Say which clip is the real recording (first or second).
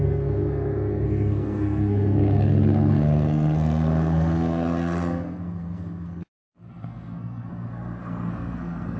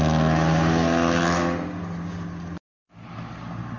second